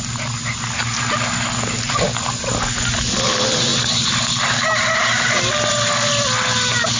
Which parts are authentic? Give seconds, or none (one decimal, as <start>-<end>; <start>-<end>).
0.0-7.0